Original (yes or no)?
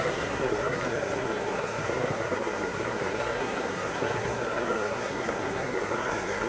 no